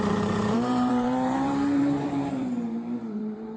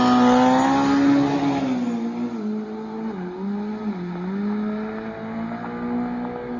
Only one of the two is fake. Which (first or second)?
first